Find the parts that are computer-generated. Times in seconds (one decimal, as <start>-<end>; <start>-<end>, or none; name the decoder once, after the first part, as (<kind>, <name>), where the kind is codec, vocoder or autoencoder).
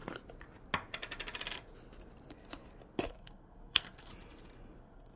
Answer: 3.1-4.1 (codec, SNAC); 4.8-5.2